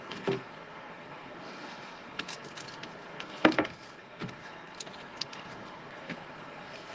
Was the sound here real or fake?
fake